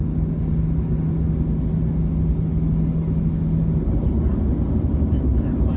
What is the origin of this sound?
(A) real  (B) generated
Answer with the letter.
A